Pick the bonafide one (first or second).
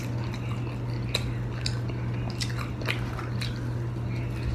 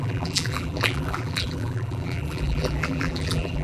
first